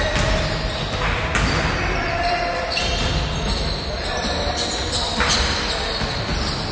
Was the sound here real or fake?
real